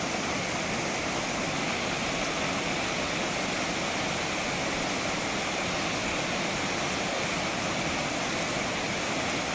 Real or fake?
real